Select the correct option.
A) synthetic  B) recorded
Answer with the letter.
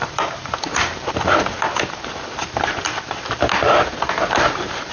A